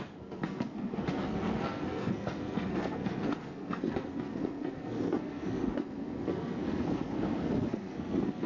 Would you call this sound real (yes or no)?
no